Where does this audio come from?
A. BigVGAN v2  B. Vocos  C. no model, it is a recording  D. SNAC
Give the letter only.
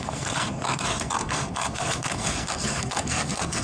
D